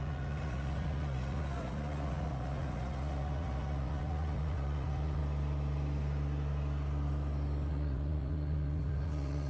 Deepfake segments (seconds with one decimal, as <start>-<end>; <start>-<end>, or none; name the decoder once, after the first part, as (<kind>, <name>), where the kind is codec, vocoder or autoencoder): 0.0-5.2 (vocoder, Vocos); 7.7-9.5